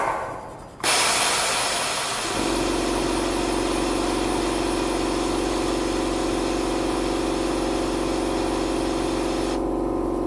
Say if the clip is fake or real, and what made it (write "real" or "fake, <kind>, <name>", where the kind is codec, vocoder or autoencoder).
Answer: real